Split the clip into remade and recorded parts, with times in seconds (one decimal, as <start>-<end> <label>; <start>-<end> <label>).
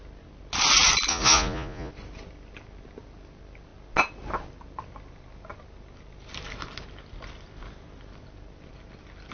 0.0-1.1 recorded; 1.1-1.9 remade; 1.9-9.3 recorded